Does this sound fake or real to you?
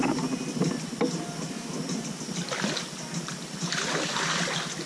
real